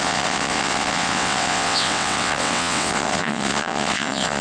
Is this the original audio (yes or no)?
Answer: no